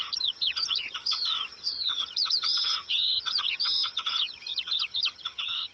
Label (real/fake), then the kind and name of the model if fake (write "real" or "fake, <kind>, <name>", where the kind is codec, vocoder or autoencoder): fake, vocoder, HiFi-GAN